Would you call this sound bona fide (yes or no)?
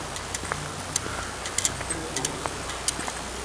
yes